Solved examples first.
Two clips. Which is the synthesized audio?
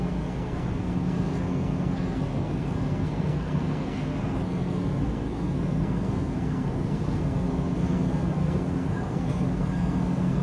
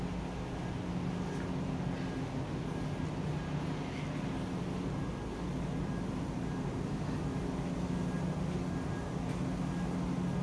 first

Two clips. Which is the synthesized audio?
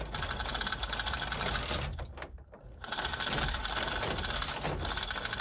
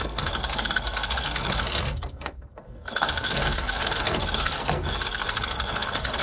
second